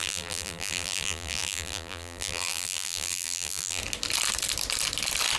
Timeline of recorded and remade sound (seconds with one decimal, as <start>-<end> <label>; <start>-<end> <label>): 0.0-3.8 remade; 3.8-5.4 recorded